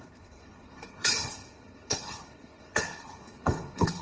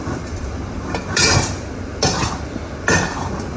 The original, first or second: second